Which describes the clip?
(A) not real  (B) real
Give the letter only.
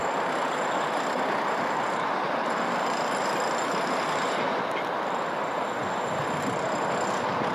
B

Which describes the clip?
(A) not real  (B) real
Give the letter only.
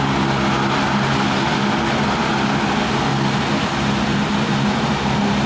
B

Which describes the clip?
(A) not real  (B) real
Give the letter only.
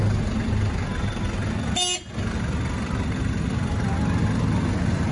B